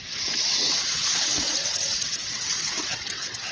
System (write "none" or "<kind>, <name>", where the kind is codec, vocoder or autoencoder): vocoder, WaveNeXt